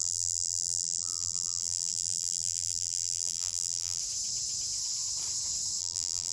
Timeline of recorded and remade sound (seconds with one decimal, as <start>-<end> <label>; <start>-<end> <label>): 0.0-4.0 remade; 4.0-5.8 recorded; 5.8-6.3 remade